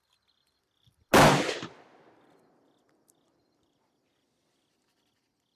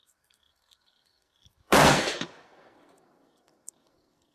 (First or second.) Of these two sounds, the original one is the first